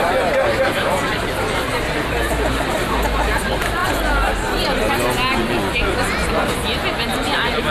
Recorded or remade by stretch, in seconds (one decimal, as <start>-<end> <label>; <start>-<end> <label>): 0.0-7.7 recorded